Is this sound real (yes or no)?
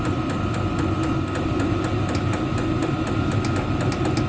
yes